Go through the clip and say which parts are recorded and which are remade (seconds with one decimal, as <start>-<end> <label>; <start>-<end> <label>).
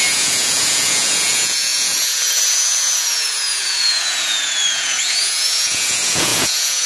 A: 0.0-6.9 remade